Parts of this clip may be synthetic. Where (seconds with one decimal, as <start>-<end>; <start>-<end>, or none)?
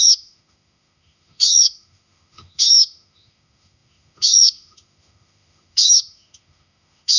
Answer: 0.0-7.2